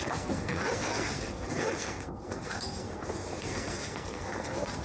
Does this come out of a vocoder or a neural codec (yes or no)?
yes